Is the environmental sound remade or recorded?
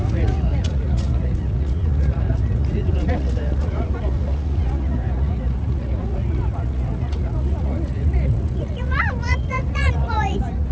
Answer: remade